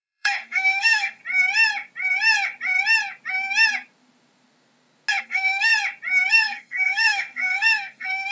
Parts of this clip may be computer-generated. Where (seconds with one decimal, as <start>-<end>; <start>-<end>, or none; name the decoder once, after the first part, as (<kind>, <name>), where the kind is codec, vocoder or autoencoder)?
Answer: 0.0-1.2 (codec, SNAC); 5.2-5.7; 6.3-8.3